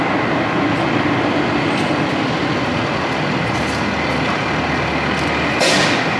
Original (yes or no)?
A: yes